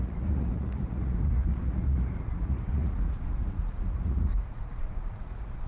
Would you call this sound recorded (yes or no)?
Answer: no